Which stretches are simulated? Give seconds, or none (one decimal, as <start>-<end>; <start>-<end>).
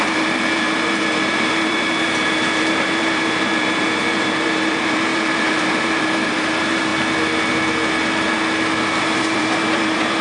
0.0-6.9; 9.0-10.2